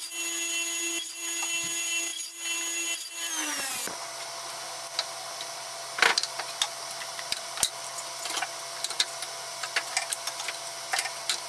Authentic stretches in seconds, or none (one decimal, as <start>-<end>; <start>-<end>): 0.0-11.5